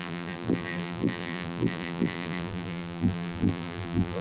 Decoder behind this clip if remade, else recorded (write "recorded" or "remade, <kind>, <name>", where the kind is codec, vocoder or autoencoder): remade, vocoder, BigVGAN v2